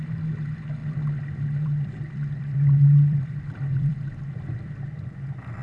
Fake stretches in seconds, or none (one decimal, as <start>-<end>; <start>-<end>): 0.8-4.2